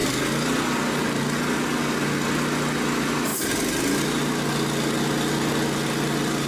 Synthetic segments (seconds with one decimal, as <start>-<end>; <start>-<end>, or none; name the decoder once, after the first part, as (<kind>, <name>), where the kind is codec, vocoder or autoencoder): none